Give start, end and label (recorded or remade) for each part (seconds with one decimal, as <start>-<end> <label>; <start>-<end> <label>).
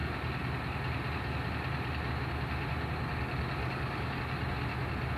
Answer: 0.0-3.6 recorded; 3.6-4.2 remade; 4.2-5.2 recorded